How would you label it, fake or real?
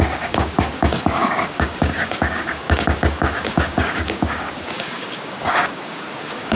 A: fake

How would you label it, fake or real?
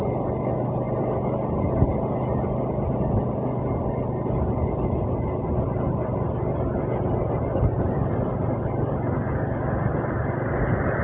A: real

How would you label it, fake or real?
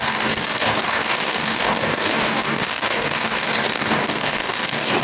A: fake